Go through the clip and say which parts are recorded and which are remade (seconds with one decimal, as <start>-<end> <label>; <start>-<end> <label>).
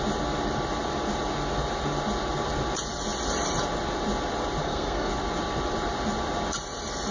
0.0-4.6 recorded; 4.6-5.1 remade; 5.1-7.1 recorded